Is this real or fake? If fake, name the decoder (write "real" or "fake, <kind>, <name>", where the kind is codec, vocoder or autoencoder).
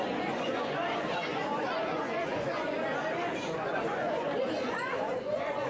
fake, vocoder, Vocos